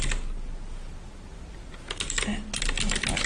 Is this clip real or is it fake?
real